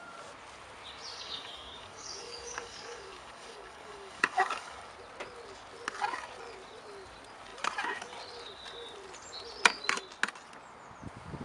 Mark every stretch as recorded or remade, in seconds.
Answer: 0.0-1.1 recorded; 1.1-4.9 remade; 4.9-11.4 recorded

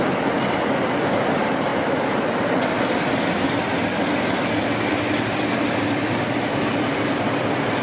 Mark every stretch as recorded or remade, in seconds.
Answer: 0.0-7.8 recorded

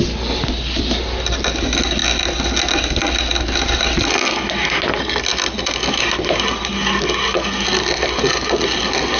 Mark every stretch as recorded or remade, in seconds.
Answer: 0.0-9.2 recorded

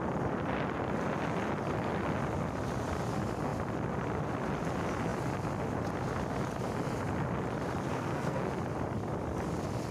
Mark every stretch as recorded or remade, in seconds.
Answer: 0.0-7.9 recorded; 7.9-8.5 remade; 8.5-9.9 recorded

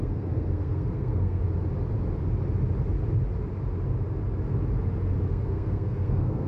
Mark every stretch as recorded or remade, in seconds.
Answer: 0.0-1.4 remade; 1.4-5.3 recorded; 5.3-6.5 remade

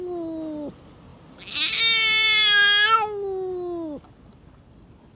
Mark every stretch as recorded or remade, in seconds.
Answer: 0.0-5.2 recorded

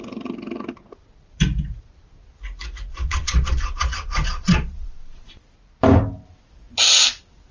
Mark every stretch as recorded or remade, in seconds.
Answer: 0.0-2.9 recorded; 2.9-5.3 remade; 5.3-7.5 recorded